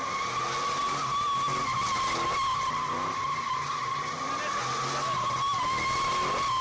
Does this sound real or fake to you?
real